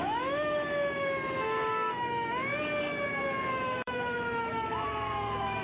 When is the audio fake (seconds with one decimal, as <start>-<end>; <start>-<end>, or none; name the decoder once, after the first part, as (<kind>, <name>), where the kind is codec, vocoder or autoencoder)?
0.0-2.5 (autoencoder, DAC-VAE); 3.5-5.6